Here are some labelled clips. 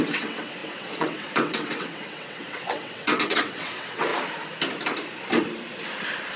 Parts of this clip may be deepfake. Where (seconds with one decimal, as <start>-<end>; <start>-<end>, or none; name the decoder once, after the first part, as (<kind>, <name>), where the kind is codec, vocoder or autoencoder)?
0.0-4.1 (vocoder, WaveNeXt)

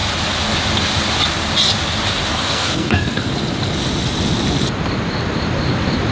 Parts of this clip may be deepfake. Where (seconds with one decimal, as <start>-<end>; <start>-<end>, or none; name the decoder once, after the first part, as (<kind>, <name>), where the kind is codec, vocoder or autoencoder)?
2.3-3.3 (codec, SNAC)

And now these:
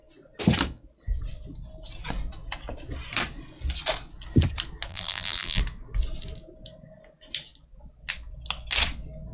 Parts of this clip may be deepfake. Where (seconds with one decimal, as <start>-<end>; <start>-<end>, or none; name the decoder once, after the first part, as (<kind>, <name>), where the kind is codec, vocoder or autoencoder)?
4.9-5.6 (vocoder, BigVGAN v2)